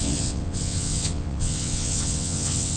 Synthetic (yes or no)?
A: yes